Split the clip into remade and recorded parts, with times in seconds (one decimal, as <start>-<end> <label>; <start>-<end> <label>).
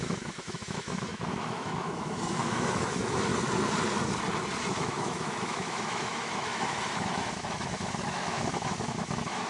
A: 0.0-3.3 remade; 3.3-4.7 recorded; 4.7-9.5 remade